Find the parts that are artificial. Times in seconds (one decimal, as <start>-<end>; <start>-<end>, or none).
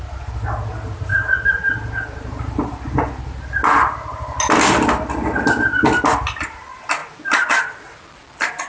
none